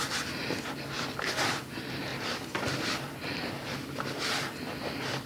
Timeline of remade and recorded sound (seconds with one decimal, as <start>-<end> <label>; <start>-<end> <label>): 0.0-5.3 recorded